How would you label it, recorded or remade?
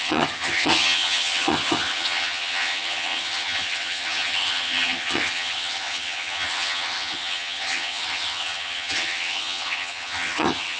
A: remade